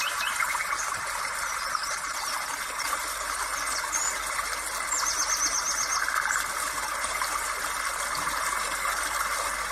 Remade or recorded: recorded